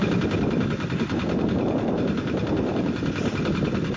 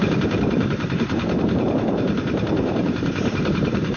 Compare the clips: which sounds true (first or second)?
first